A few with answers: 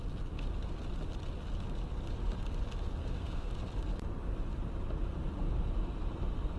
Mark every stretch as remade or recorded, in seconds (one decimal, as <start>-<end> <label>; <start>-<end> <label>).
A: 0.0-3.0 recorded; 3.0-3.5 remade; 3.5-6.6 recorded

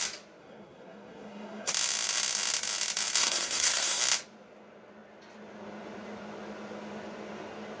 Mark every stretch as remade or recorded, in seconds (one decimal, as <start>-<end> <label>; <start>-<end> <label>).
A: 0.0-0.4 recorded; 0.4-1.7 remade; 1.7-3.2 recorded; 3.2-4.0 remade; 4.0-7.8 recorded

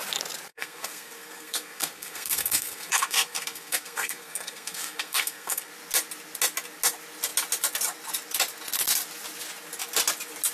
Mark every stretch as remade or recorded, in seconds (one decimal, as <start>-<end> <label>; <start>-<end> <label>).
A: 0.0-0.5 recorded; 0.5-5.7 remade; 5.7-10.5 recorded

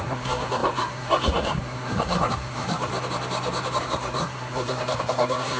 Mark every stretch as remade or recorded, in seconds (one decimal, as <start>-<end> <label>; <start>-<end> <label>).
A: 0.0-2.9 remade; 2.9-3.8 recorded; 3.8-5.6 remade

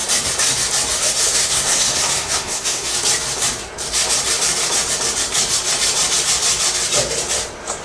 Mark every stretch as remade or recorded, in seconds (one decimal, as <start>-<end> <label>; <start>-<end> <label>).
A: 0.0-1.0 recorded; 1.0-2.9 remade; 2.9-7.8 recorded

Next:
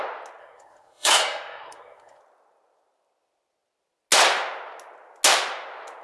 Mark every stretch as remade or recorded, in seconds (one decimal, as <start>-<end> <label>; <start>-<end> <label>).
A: 0.0-0.4 recorded; 0.4-2.2 remade; 2.2-6.0 recorded

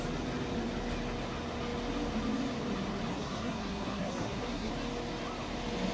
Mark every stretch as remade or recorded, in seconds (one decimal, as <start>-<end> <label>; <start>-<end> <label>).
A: 0.0-3.1 recorded; 3.1-4.7 remade; 4.7-5.9 recorded

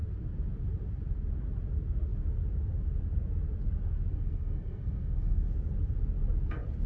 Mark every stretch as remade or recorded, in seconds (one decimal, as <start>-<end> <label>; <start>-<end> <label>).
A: 0.0-4.1 recorded; 4.1-5.5 remade; 5.5-6.9 recorded